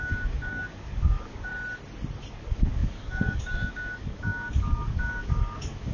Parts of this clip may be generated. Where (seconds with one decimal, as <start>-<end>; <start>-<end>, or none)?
0.0-1.5; 2.3-5.9